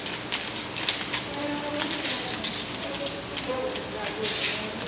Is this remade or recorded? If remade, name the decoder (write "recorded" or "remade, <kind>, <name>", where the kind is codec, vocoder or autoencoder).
recorded